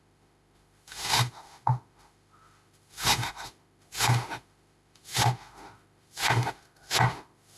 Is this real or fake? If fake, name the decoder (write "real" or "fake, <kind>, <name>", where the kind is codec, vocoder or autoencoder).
fake, autoencoder, DAC-VAE